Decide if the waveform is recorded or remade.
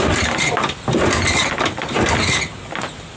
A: recorded